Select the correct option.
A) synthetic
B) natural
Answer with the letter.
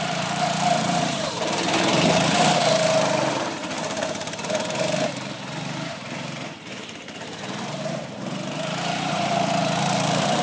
A